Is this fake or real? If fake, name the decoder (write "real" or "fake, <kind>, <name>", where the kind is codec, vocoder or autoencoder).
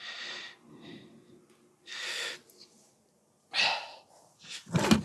real